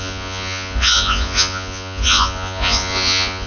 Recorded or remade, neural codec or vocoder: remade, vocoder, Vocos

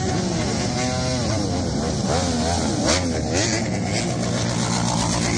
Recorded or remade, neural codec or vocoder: recorded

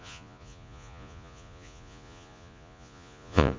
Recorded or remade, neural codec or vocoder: remade, vocoder, Vocos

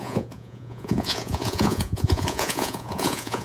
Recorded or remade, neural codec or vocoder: remade, vocoder, Vocos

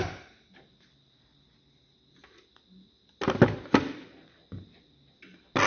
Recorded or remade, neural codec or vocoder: recorded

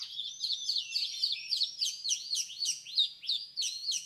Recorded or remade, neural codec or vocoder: remade, vocoder, Vocos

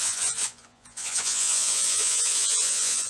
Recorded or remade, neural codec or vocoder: remade, vocoder, Vocos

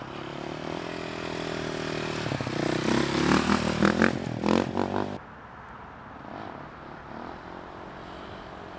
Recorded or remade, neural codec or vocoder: recorded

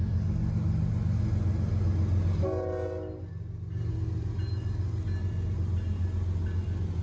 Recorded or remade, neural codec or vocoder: recorded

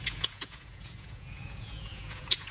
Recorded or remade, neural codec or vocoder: remade, vocoder, Vocos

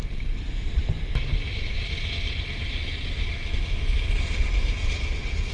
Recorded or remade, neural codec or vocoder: recorded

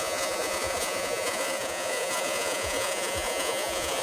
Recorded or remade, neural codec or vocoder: remade, vocoder, Vocos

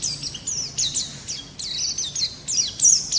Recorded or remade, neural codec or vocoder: recorded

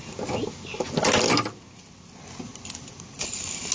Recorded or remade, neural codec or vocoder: recorded